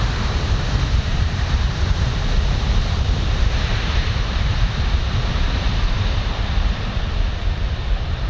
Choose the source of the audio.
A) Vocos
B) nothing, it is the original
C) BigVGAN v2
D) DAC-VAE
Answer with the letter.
C